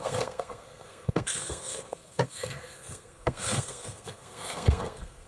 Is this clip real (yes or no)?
no